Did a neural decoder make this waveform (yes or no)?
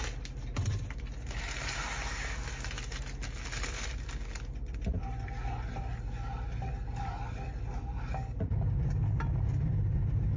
no